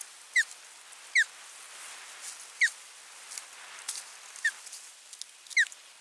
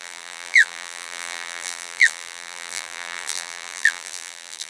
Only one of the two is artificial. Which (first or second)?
second